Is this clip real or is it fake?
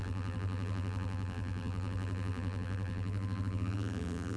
fake